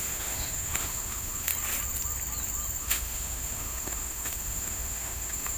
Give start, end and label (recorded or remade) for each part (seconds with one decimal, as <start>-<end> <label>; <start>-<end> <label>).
0.0-1.5 remade; 1.5-2.8 recorded; 2.8-5.6 remade